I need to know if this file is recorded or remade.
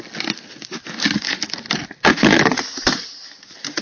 recorded